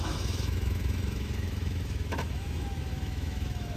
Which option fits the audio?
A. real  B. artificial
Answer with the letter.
B